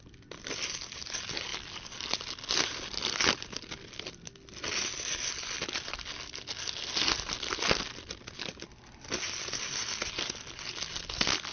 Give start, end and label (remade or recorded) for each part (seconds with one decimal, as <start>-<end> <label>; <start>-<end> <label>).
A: 0.0-11.5 recorded